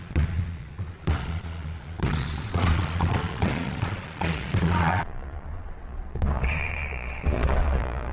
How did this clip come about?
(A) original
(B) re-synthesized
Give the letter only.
B